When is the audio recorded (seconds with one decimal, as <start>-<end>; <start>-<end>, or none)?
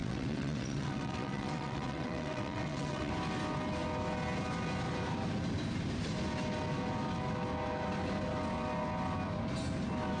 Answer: 3.1-10.2